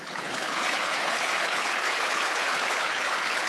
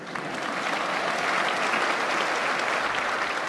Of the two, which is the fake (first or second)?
first